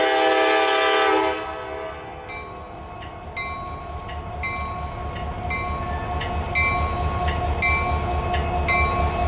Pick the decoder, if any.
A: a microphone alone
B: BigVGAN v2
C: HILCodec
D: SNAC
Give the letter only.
A